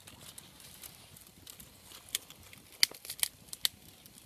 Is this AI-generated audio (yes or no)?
no